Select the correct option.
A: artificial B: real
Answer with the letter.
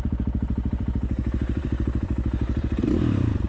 A